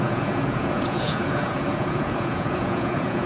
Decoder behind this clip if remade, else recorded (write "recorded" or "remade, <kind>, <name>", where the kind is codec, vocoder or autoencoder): remade, vocoder, Vocos